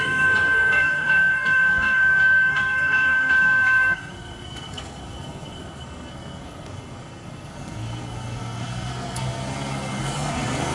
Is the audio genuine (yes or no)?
no